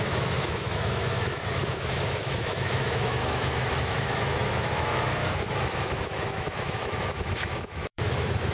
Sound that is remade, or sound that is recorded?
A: remade